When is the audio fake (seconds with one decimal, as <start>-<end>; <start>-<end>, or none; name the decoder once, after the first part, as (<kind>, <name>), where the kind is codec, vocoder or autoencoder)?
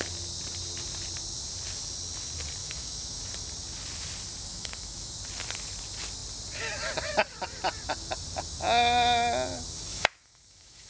2.6-3.2 (autoencoder, DAC-VAE); 4.5-5.1; 9.9-10.9